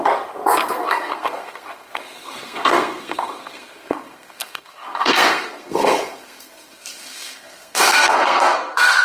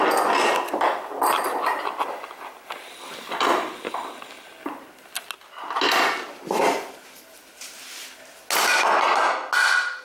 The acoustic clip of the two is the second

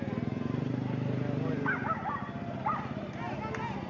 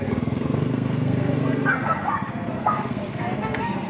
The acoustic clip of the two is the first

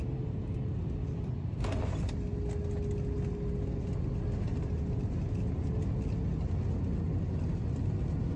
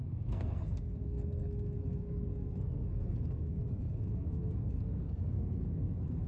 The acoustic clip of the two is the first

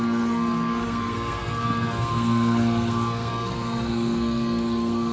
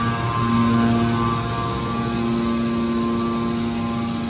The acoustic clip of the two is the second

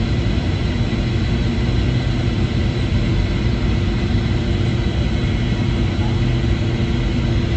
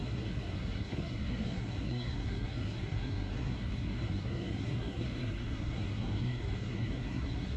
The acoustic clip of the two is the first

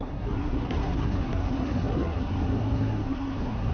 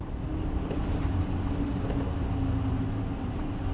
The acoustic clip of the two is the second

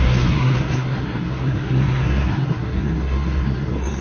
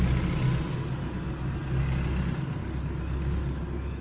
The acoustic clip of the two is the second